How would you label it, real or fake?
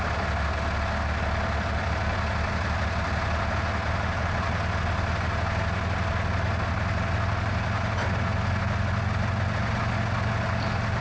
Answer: real